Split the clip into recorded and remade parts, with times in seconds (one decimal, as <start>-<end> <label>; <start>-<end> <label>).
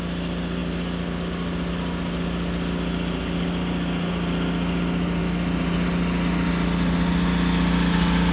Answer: 0.0-8.3 recorded